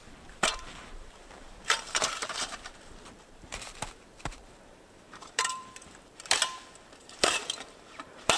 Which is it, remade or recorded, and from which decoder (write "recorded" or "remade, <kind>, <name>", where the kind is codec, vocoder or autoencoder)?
remade, vocoder, BigVGAN v2